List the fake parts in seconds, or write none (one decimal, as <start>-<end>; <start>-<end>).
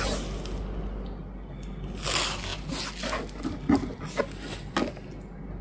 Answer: none